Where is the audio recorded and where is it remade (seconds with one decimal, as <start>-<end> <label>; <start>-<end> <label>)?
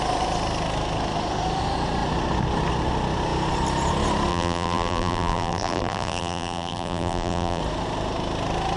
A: 0.0-4.3 recorded; 4.3-7.6 remade; 7.6-8.8 recorded